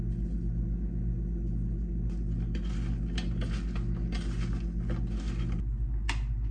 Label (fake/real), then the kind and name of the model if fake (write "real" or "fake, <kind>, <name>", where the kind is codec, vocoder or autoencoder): real